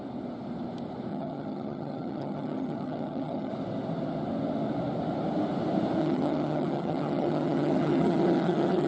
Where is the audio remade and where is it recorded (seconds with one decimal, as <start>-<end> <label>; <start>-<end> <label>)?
0.0-1.1 recorded; 1.1-3.5 remade; 3.5-6.0 recorded; 6.0-8.9 remade